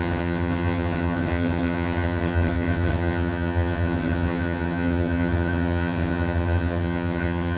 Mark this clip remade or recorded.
remade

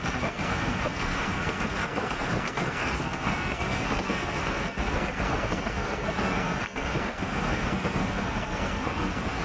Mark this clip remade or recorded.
remade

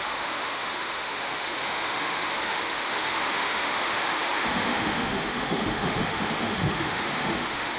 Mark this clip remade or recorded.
remade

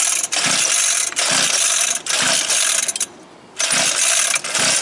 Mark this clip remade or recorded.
recorded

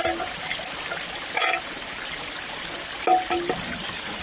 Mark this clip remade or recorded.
recorded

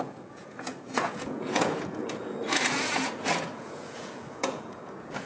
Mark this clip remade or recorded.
remade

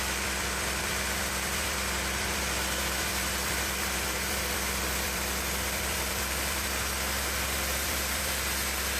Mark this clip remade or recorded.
remade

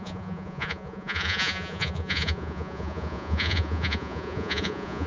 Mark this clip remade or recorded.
remade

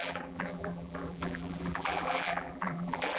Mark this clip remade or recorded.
remade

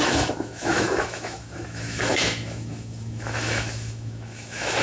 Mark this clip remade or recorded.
remade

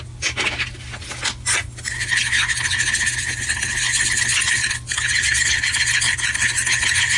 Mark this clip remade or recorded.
recorded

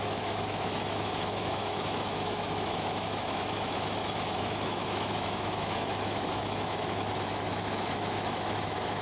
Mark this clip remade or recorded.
remade